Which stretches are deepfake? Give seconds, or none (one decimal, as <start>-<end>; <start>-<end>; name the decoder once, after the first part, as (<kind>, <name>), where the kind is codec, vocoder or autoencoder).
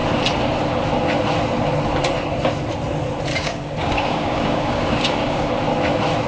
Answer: 3.3-5.5 (codec, DAC)